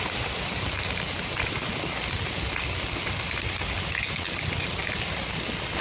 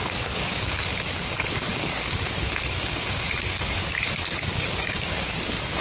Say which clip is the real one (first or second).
first